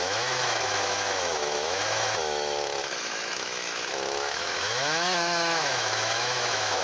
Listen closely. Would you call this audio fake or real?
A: fake